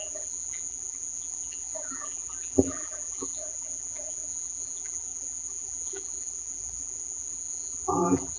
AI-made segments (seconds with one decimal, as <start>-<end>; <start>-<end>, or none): 0.0-8.4